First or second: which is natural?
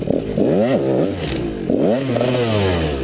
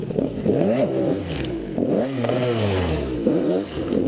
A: first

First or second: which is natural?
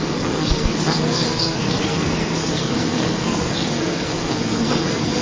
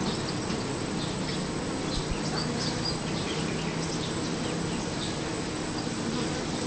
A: second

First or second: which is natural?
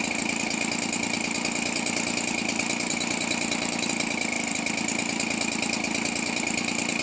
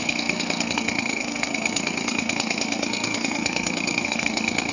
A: first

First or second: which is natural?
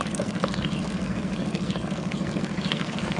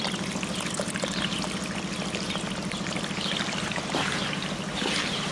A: second